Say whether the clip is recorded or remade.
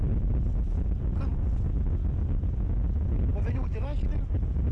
recorded